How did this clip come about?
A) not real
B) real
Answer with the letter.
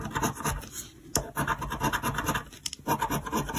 B